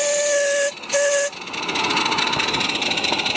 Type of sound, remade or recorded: recorded